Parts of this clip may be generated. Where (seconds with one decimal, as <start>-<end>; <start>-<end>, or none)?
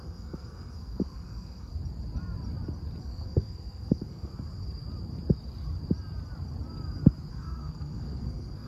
0.0-1.7; 3.0-4.3; 7.3-8.7